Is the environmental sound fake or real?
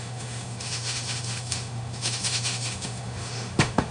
fake